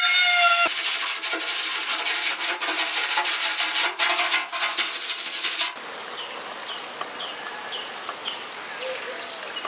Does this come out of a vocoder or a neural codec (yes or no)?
no